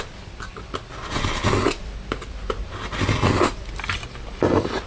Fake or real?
real